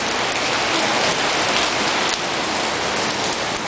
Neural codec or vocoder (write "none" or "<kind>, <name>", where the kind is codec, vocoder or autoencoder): none